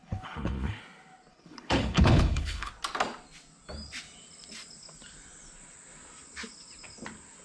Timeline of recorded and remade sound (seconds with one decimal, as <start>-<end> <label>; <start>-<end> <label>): 0.0-0.8 remade; 0.8-1.3 recorded; 1.3-2.7 remade; 2.7-7.4 recorded